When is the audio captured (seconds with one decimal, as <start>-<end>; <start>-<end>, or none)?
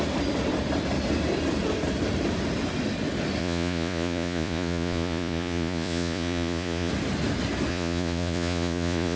0.0-3.4; 6.9-7.7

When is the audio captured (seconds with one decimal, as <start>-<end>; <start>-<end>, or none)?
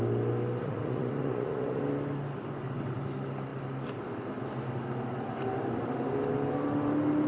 0.0-0.6; 1.8-7.3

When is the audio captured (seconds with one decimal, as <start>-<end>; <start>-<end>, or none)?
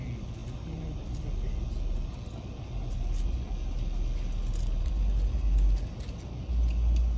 0.0-7.2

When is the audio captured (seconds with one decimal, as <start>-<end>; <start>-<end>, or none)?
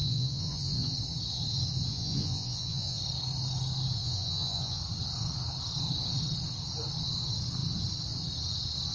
0.9-1.9; 3.0-4.0; 4.8-8.9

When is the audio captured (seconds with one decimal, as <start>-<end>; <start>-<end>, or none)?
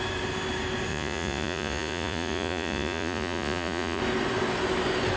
0.0-0.9; 4.0-5.2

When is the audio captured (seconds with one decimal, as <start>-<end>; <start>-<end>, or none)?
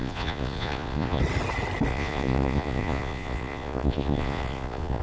1.2-1.9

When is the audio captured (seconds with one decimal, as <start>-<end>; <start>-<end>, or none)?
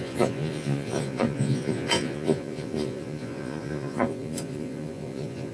none